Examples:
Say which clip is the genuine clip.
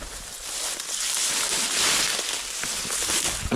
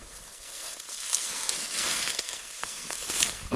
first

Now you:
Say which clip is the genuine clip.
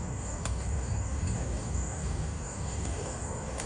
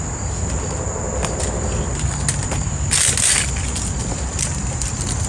second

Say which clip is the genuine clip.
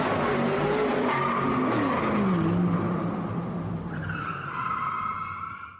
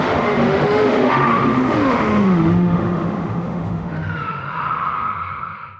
first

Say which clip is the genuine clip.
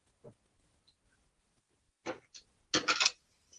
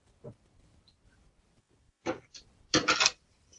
first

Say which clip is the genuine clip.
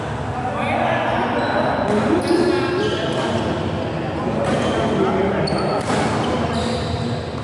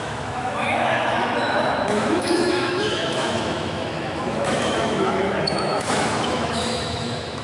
first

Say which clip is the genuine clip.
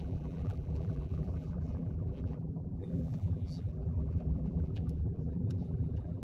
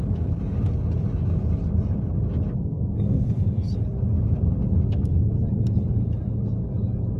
second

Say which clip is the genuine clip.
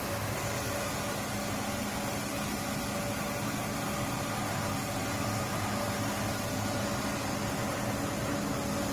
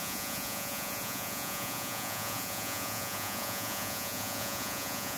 first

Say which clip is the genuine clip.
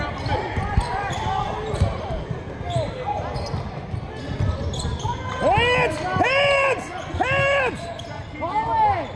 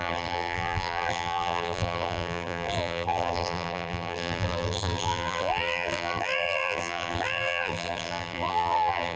first